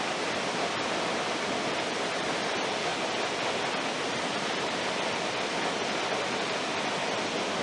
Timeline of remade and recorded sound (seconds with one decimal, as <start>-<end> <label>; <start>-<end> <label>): 0.0-2.9 remade; 2.9-4.4 recorded; 4.4-7.6 remade